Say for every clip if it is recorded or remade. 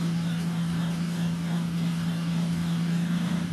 remade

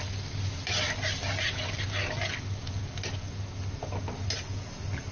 recorded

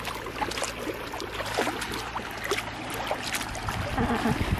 recorded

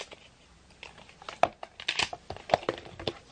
recorded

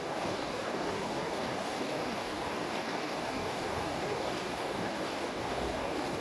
remade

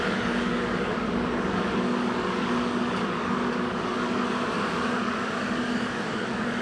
remade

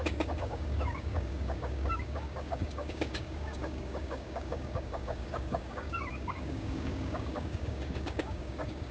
remade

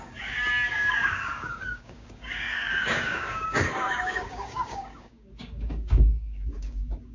remade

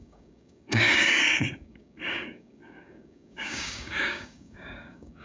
remade